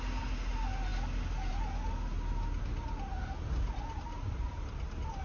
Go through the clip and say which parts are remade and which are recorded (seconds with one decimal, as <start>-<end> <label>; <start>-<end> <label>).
0.0-5.2 recorded